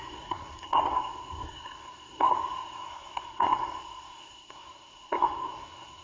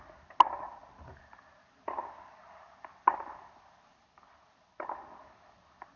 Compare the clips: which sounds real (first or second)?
second